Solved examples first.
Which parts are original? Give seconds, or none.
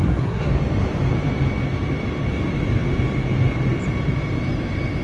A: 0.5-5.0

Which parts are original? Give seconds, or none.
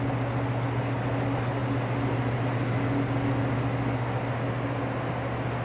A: 0.0-5.6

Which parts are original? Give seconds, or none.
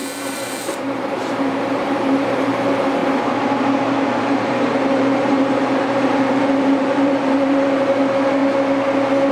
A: 3.0-4.2; 8.4-9.3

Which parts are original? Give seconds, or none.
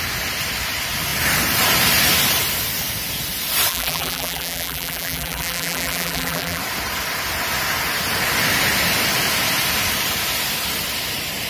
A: 0.0-3.7; 6.6-11.5